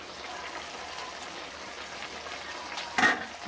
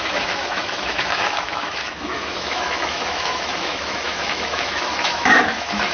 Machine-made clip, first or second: second